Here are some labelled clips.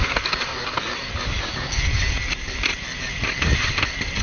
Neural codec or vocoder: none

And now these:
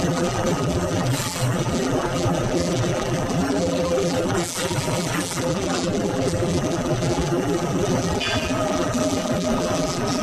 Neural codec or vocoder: vocoder, BigVGAN v2